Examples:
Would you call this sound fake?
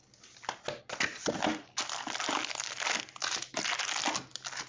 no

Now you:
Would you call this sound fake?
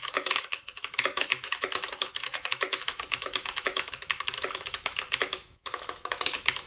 yes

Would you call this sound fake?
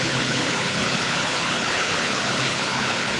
yes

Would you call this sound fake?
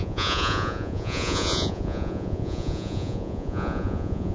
yes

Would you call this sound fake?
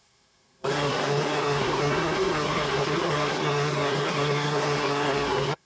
yes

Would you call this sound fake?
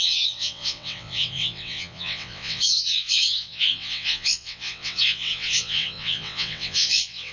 yes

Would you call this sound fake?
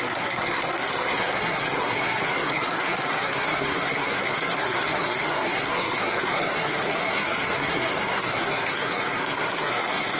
yes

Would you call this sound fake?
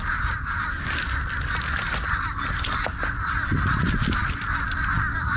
no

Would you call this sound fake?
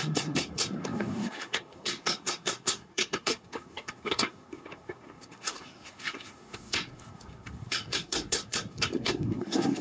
yes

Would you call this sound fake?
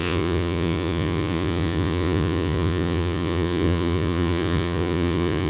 yes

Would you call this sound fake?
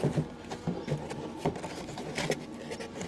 no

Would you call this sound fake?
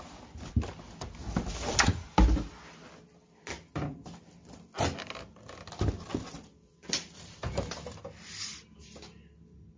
no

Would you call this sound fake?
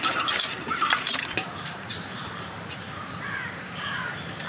yes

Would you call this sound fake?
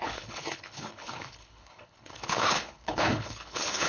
yes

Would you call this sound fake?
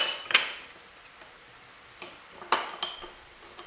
no